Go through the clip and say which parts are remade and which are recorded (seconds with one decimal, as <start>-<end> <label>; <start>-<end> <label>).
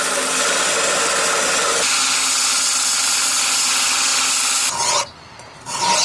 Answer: 0.0-6.0 recorded